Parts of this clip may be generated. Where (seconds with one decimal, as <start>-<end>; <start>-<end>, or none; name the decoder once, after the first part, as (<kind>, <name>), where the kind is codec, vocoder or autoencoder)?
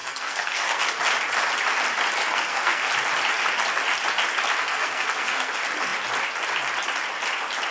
0.0-1.0 (codec, SNAC); 2.2-2.9; 4.6-5.5